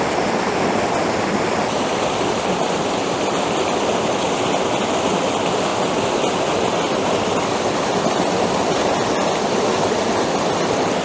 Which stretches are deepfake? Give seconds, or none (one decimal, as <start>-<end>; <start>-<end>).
none